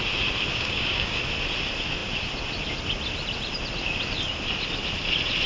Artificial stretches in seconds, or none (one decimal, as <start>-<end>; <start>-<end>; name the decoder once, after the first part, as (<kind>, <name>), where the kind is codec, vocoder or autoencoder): 0.5-1.2 (codec, DAC)